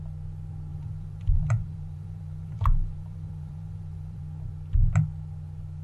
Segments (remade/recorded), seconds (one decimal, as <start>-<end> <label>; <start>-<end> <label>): 0.0-0.7 recorded; 0.7-4.2 remade; 4.2-5.8 recorded